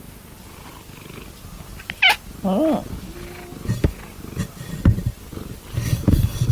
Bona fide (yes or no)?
yes